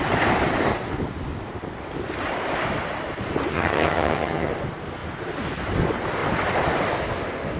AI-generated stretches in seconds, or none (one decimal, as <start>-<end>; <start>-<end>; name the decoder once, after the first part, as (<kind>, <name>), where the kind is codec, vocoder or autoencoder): 3.5-4.5 (vocoder, HiFi-GAN)